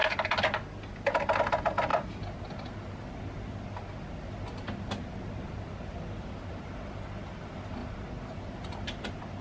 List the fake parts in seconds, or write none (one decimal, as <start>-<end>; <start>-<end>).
1.4-1.9; 6.1-7.8; 8.4-9.4